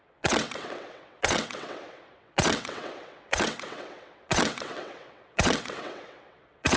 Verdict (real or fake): fake